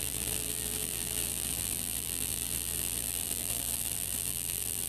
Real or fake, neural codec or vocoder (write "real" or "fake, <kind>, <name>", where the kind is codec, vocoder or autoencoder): fake, vocoder, BigVGAN v2